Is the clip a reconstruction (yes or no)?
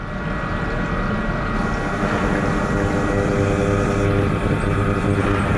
no